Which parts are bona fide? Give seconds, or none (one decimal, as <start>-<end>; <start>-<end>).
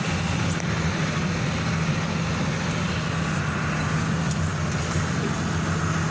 0.0-6.1